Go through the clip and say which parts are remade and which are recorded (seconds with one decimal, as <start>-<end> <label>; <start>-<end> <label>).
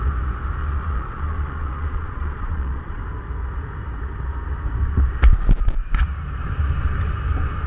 0.0-0.6 recorded; 0.6-3.0 remade; 3.0-7.7 recorded